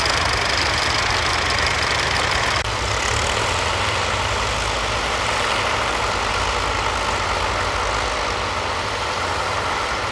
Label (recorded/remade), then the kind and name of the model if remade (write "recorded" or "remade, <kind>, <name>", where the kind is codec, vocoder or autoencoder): recorded